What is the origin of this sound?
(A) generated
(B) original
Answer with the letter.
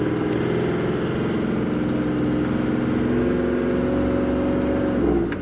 B